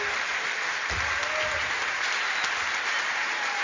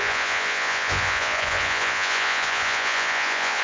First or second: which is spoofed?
second